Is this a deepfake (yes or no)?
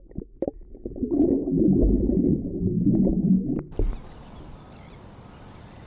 no